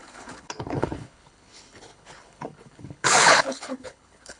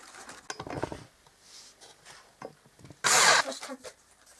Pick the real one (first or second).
second